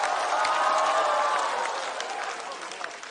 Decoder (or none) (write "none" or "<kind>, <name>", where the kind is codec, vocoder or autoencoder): none